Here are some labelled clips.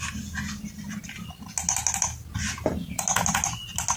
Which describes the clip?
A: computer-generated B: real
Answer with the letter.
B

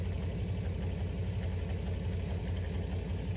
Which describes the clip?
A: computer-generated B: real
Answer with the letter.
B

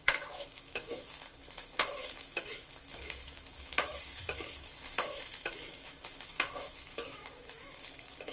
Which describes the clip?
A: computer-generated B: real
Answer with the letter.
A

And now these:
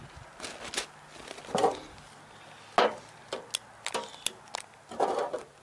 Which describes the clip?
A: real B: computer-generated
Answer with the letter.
A